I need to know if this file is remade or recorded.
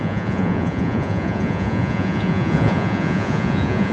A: remade